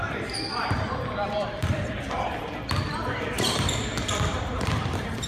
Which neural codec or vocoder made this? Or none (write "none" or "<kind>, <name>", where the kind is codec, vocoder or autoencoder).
vocoder, BigVGAN v2